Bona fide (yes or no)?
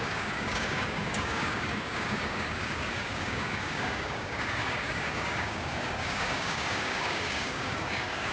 no